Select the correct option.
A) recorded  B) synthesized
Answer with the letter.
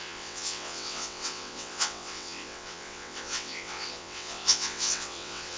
B